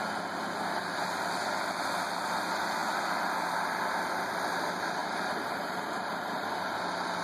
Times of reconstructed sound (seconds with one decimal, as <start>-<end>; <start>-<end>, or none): 5.0-7.2